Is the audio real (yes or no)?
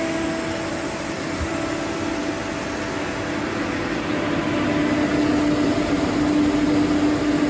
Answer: yes